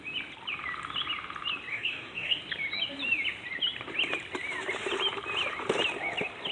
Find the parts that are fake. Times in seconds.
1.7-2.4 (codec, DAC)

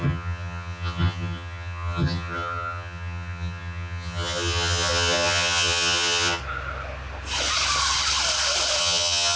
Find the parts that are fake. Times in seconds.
0.0-6.4 (vocoder, HiFi-GAN); 8.8-9.4

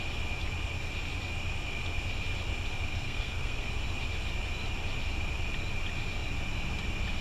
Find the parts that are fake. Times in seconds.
2.9-3.7 (codec, SNAC)

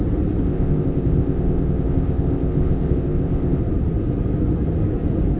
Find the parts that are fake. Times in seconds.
0.4-3.6 (codec, ZipCodec)

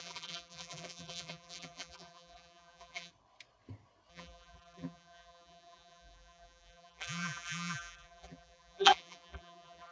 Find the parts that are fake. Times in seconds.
0.0-3.1 (vocoder, BigVGAN v2); 4.1-9.9

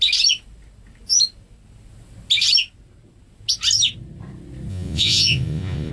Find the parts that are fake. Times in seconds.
4.7-5.9 (vocoder, Vocos)

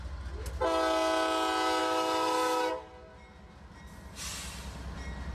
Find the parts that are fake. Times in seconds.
1.8-2.7 (autoencoder, DAC-VAE)

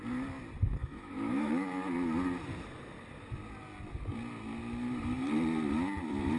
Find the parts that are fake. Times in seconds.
0.8-1.5 (autoencoder, DAC-VAE)